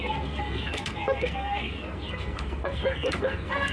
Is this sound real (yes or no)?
no